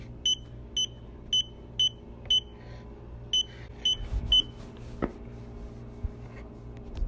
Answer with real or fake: real